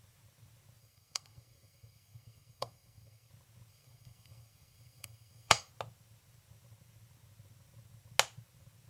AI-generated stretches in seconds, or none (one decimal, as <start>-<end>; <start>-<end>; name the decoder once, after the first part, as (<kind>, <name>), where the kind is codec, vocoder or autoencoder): 0.8-3.3 (codec, SNAC); 3.7-5.7